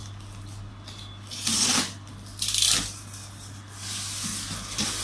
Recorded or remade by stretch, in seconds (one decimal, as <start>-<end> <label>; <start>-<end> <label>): 0.0-5.0 recorded